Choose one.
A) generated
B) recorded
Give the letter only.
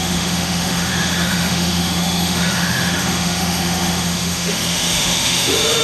A